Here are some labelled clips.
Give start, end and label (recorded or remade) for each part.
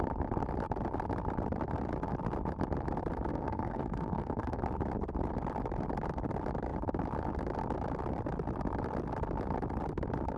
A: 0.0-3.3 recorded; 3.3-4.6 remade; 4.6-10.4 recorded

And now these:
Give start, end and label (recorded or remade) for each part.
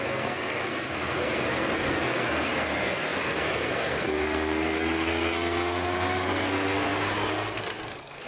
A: 0.0-8.3 remade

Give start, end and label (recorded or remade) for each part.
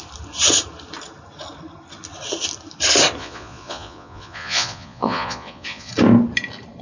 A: 0.0-3.2 recorded; 3.2-5.9 remade; 5.9-6.8 recorded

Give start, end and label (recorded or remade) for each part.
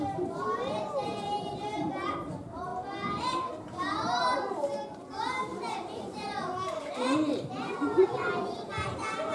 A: 0.0-2.7 remade; 2.7-3.2 recorded; 3.2-9.3 remade